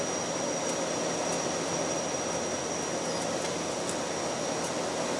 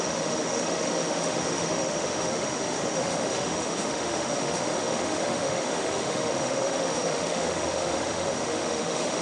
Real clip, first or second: first